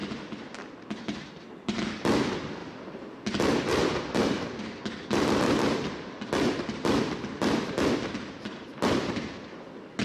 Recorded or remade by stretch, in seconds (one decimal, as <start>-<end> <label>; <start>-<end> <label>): 0.0-10.0 recorded